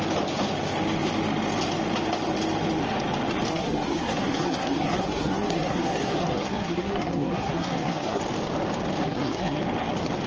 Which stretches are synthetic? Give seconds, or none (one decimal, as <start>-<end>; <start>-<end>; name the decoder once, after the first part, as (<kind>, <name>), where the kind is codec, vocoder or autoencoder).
3.5-8.2 (codec, SNAC); 9.0-9.6